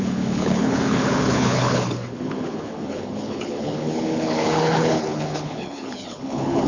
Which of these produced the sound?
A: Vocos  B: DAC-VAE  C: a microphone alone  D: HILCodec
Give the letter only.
D